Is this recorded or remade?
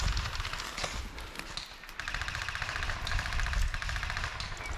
recorded